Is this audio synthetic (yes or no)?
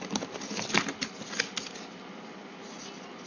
no